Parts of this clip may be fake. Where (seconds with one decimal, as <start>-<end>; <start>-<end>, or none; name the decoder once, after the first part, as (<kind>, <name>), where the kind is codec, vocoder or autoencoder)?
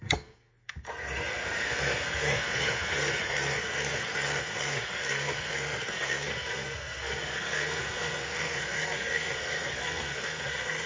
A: 0.0-10.9 (codec, SNAC)